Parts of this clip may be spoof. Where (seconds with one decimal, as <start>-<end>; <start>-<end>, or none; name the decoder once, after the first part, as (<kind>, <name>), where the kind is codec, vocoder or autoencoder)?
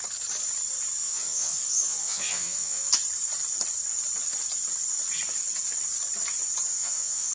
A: 1.0-2.9 (vocoder, Vocos); 6.7-7.3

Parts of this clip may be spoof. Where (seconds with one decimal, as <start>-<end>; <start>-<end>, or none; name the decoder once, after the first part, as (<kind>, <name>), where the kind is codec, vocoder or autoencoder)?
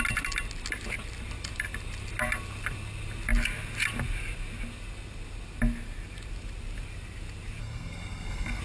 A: 7.6-8.6 (codec, SNAC)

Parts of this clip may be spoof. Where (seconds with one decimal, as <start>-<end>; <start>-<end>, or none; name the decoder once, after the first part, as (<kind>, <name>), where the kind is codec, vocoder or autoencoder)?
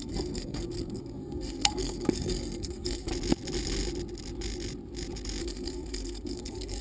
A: 0.0-3.1 (codec, SNAC); 5.4-6.8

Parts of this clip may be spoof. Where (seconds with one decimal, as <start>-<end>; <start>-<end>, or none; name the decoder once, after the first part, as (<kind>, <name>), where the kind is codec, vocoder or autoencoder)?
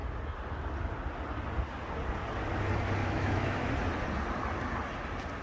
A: 3.0-3.7 (autoencoder, DAC-VAE)